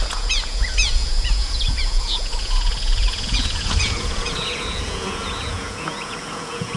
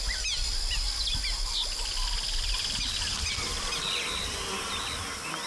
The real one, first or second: second